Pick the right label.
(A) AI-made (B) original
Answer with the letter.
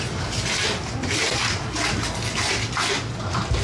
B